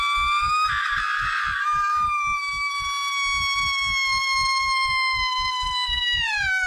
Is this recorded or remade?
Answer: recorded